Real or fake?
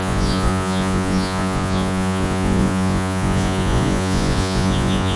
fake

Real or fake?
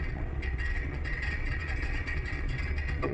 fake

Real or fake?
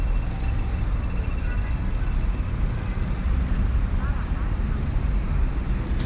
real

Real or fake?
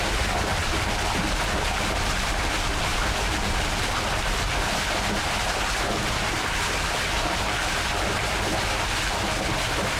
real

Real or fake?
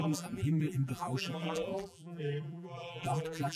fake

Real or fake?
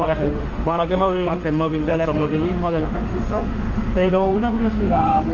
fake